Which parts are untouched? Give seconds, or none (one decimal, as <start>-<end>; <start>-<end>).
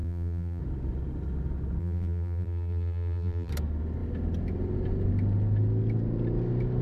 0.6-1.8; 3.5-6.8